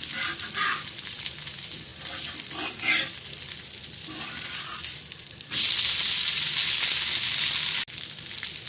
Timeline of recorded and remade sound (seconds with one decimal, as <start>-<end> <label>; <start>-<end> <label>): 0.0-8.7 recorded